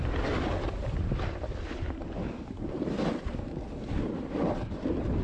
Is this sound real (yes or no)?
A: yes